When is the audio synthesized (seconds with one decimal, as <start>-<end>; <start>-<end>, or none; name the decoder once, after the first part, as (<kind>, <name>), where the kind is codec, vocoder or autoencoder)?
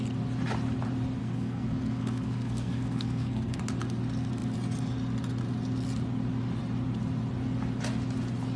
1.2-3.6 (codec, SNAC)